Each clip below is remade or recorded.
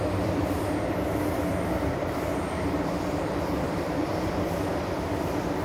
remade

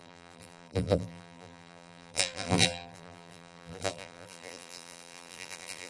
remade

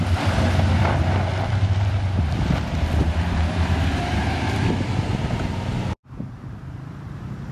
remade